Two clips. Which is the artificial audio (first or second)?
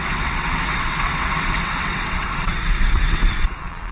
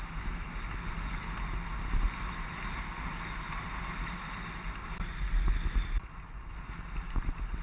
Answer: first